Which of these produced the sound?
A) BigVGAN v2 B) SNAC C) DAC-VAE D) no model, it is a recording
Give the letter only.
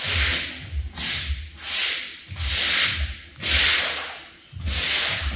D